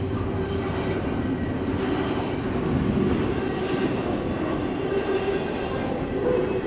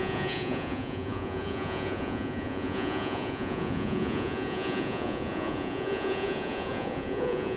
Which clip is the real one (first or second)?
first